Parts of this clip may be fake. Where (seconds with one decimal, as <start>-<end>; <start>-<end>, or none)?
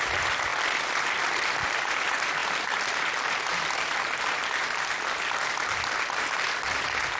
none